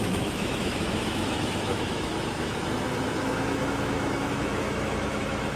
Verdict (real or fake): fake